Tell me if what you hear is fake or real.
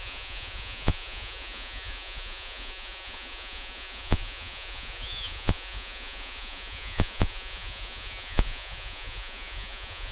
fake